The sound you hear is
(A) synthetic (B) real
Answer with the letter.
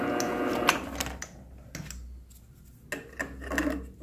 B